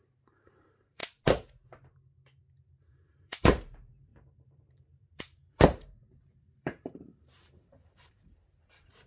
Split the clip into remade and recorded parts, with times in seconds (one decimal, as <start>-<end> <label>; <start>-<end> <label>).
0.0-1.0 remade; 1.0-2.8 recorded; 2.8-9.1 remade